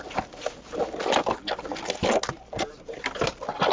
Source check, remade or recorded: recorded